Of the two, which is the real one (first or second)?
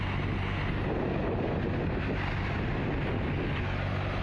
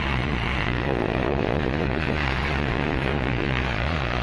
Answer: first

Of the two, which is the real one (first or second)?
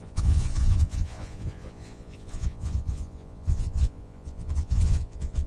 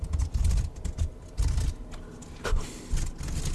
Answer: second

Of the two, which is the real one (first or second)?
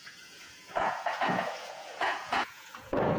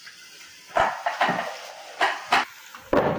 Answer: second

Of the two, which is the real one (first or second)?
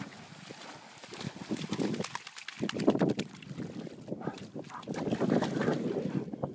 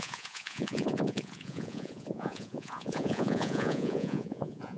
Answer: first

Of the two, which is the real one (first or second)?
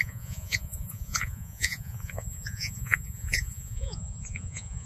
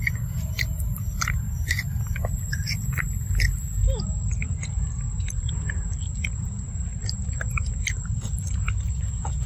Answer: second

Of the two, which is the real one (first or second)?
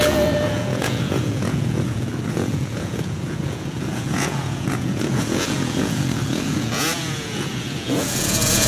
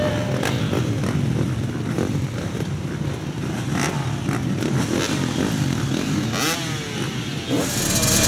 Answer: second